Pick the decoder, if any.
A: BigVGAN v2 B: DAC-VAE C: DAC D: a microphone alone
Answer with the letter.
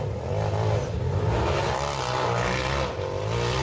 D